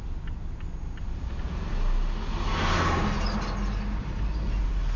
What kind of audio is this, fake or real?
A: real